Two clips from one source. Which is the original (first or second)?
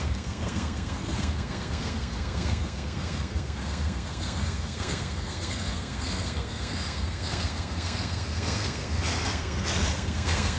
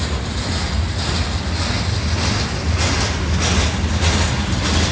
second